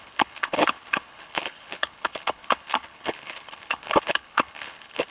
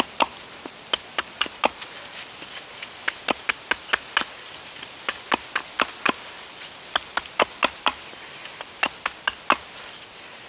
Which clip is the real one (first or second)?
second